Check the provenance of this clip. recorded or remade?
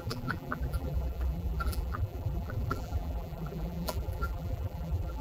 remade